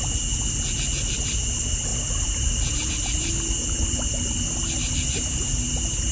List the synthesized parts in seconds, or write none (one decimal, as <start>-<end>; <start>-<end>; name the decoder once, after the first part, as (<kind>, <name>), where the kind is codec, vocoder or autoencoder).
none